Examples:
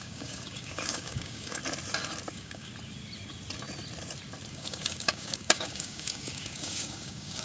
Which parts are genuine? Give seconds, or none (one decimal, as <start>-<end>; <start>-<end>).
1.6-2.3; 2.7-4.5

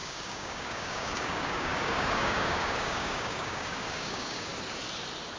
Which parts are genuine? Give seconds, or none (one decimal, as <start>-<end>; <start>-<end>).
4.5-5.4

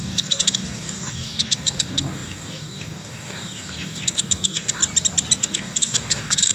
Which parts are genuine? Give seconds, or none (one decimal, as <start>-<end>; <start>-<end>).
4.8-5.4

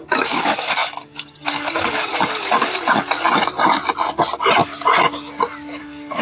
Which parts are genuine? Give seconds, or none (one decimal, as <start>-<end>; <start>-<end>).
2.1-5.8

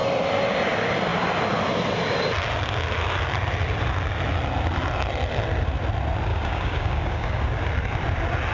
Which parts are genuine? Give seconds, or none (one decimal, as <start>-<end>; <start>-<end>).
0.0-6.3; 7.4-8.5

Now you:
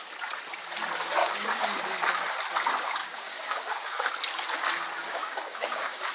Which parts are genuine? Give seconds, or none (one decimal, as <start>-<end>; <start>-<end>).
0.0-1.2; 1.8-3.0; 4.1-5.0